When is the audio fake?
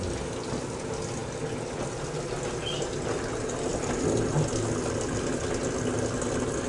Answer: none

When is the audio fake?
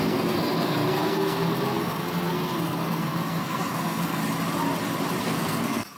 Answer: 0.0-4.2 (codec, SNAC); 5.2-6.0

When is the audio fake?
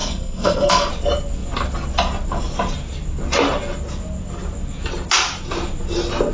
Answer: 0.0-0.9 (codec, SNAC)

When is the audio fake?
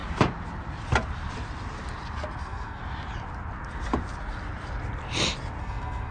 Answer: 2.4-2.8 (codec, SNAC); 5.6-6.1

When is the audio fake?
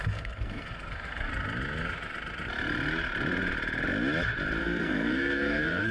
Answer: 0.0-1.3 (codec, SNAC); 4.6-5.9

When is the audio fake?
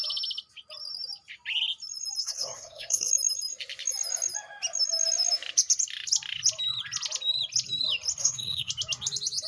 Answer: 2.2-3.1 (codec, SNAC); 8.2-8.7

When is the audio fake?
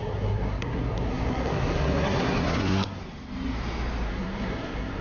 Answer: 0.0-3.0 (codec, SNAC); 4.1-5.0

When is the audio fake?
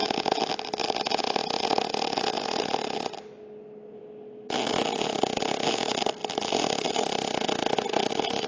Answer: none